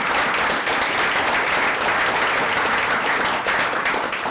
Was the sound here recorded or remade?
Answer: recorded